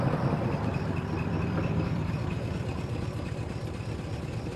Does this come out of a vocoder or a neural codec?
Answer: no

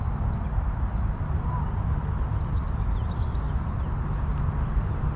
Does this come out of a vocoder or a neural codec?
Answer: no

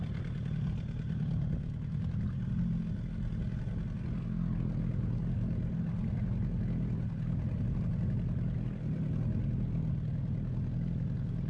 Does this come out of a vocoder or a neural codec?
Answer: no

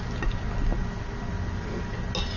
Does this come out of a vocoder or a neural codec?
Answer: no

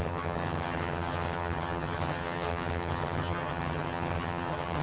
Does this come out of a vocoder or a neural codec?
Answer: yes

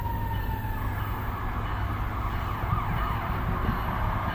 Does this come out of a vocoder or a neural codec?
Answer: no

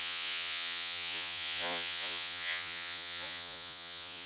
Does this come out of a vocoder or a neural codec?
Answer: yes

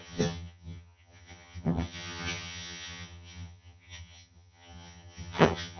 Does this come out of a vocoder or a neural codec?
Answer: yes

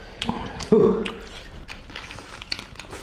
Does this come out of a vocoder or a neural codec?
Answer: no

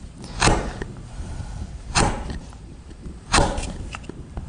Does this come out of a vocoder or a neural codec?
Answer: yes